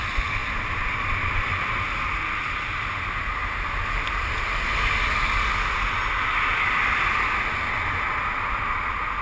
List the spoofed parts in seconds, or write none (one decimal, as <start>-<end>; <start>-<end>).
none